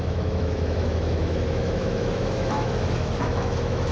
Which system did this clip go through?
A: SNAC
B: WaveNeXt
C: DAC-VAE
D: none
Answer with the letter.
C